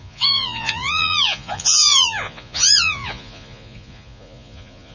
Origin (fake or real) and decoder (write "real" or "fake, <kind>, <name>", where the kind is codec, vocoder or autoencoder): fake, vocoder, Vocos